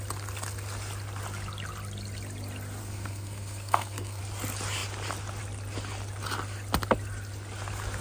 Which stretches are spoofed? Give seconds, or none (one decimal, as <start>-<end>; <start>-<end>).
2.8-4.2